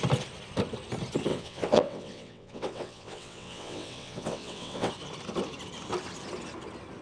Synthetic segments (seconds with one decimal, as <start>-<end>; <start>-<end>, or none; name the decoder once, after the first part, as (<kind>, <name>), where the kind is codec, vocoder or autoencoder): 1.3-4.9 (vocoder, WaveNeXt)